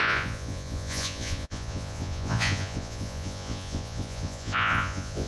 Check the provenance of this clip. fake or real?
fake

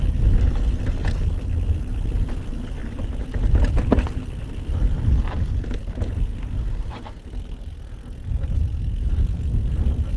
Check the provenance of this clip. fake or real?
real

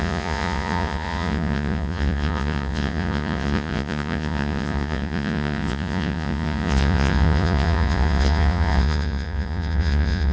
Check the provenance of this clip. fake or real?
fake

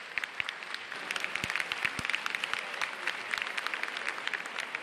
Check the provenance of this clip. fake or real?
real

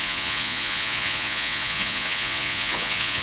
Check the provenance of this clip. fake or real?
fake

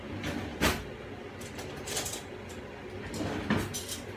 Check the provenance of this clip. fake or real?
real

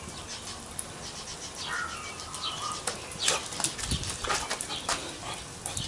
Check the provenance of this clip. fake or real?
real